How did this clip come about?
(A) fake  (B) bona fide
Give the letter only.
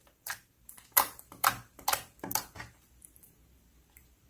A